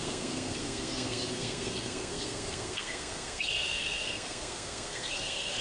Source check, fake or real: fake